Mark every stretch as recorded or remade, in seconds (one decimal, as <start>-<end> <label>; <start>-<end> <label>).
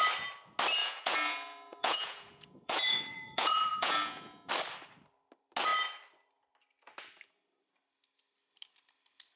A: 0.0-0.8 recorded; 0.8-4.5 remade; 4.5-9.4 recorded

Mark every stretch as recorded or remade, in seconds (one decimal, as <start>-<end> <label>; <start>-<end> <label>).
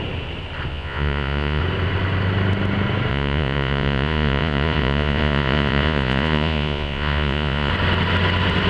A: 0.0-0.7 recorded; 0.7-1.6 remade; 1.6-3.1 recorded; 3.1-7.7 remade; 7.7-8.7 recorded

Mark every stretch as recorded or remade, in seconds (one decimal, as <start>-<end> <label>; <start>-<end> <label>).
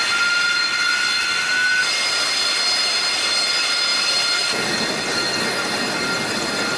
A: 0.0-6.8 recorded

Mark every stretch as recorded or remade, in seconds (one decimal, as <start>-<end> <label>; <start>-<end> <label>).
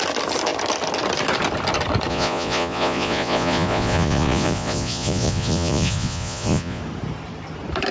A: 0.0-2.1 recorded; 2.1-6.8 remade; 6.8-7.9 recorded